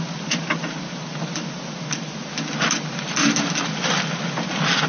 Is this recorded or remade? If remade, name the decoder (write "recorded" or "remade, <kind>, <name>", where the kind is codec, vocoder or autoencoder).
recorded